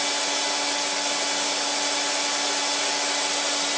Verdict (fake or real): real